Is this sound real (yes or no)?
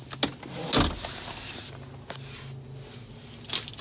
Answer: yes